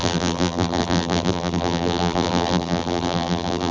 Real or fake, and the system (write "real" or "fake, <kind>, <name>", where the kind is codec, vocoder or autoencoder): fake, vocoder, BigVGAN v2